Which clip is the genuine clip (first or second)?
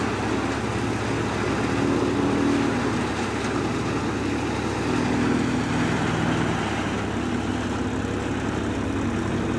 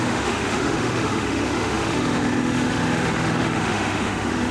first